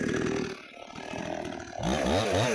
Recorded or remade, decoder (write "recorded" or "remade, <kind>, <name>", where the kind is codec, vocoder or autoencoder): recorded